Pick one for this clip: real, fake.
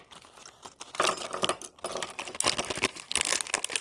real